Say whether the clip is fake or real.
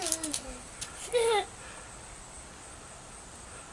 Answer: real